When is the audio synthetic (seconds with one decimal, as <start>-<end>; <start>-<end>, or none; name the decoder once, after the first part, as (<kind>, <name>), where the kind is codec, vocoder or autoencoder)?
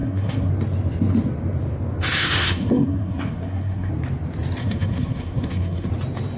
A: 0.0-0.5 (codec, SNAC); 2.2-3.9; 4.6-5.9